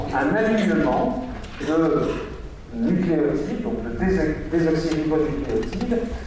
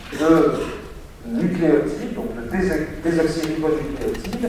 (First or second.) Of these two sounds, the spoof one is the second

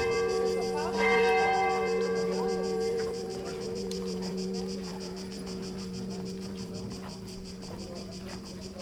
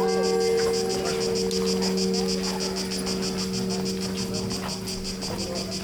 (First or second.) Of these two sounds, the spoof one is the first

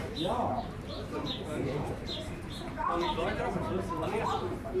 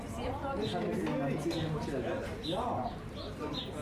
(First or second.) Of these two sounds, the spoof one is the first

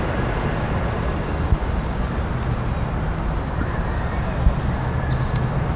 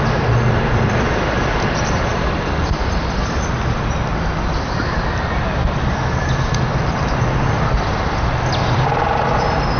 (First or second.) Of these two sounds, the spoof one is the second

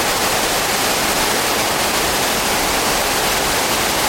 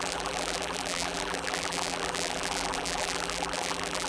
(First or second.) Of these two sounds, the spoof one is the second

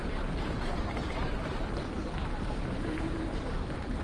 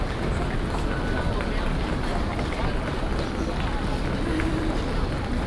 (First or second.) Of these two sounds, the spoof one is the first